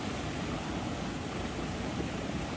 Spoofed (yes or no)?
yes